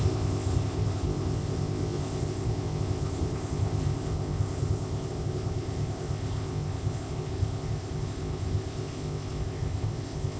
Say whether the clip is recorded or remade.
remade